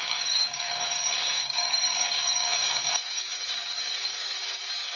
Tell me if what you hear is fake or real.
fake